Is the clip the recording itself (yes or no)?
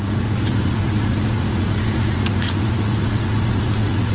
no